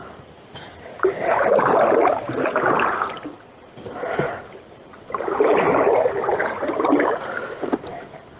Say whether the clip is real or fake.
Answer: fake